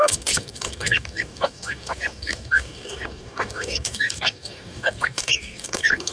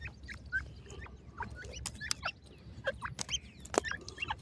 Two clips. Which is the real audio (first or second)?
second